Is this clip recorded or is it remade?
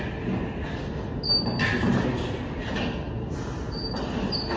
recorded